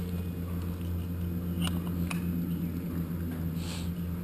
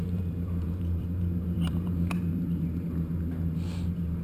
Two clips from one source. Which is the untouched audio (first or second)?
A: first